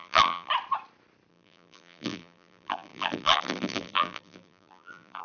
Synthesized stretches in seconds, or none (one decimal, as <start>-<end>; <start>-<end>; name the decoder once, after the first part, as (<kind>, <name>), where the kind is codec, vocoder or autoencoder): 0.0-0.5 (vocoder, BigVGAN v2); 1.3-5.2